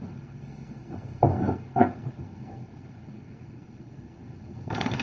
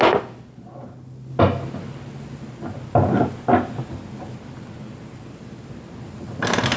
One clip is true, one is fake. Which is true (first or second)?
second